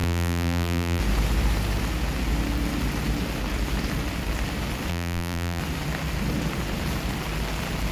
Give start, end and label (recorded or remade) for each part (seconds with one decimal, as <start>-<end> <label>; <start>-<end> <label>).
0.0-1.0 remade; 1.0-4.9 recorded; 4.9-5.6 remade; 5.6-7.9 recorded

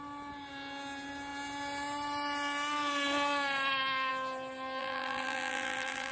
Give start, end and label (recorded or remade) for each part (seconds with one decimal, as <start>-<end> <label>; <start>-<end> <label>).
0.0-4.8 recorded; 4.8-6.1 remade

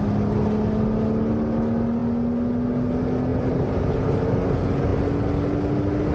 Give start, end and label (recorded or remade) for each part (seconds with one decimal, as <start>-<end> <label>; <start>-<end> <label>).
0.0-3.3 recorded; 3.3-4.3 remade; 4.3-6.1 recorded

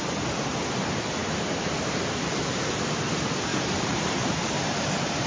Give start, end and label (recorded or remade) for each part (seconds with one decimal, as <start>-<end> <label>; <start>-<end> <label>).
0.0-3.5 recorded; 3.5-4.0 remade; 4.0-5.3 recorded

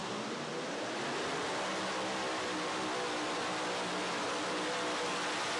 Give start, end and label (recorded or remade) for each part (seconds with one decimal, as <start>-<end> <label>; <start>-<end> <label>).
0.0-5.6 recorded

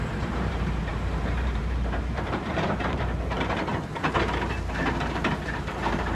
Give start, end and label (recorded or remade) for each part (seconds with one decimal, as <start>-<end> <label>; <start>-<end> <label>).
0.0-3.7 remade; 3.7-4.2 recorded; 4.2-6.2 remade

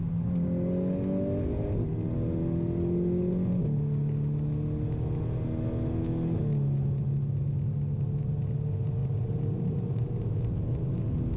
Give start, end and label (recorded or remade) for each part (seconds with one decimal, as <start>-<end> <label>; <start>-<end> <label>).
0.0-9.0 recorded; 9.0-10.7 remade; 10.7-11.4 recorded

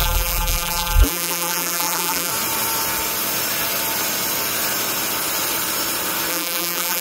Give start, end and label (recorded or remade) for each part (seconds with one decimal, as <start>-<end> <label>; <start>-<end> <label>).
0.0-2.3 remade; 2.3-6.3 recorded; 6.3-7.0 remade